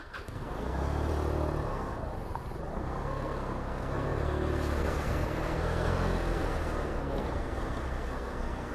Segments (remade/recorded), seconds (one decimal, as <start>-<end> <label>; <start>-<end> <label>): 0.0-1.1 remade; 1.1-1.7 recorded; 1.7-2.1 remade; 2.1-2.7 recorded; 2.7-8.7 remade